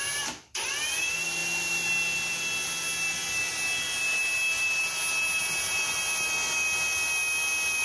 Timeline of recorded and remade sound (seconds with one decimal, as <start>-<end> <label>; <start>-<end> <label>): 0.0-7.8 recorded